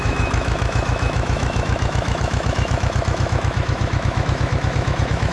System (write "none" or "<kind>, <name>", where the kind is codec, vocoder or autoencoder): autoencoder, DAC-VAE